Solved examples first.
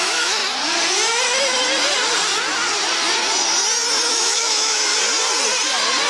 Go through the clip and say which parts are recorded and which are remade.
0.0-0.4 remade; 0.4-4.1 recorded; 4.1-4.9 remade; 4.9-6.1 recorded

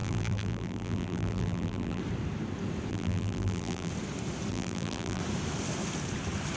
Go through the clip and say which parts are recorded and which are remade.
0.0-2.0 remade; 2.0-2.9 recorded; 2.9-3.9 remade; 3.9-4.5 recorded; 4.5-5.2 remade; 5.2-6.6 recorded

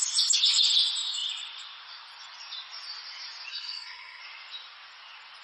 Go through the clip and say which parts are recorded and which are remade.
0.0-3.5 recorded; 3.5-4.2 remade; 4.2-5.4 recorded

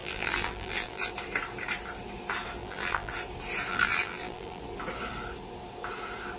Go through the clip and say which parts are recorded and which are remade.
0.0-1.1 remade; 1.1-2.6 recorded; 2.6-3.1 remade; 3.1-3.7 recorded; 3.7-4.6 remade; 4.6-6.4 recorded